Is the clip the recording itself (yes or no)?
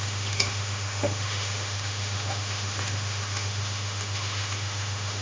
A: no